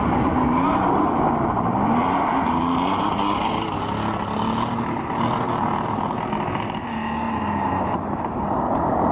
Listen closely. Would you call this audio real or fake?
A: real